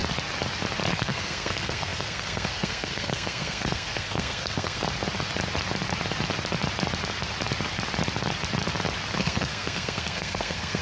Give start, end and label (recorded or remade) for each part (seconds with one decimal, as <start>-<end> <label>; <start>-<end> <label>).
0.0-0.9 recorded; 0.9-4.8 remade; 4.8-9.2 recorded; 9.2-10.8 remade